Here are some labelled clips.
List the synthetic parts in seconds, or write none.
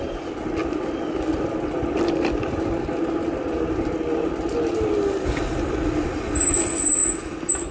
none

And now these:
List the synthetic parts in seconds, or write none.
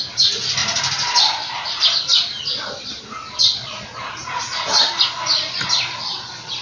4.2-4.8 (vocoder, Vocos)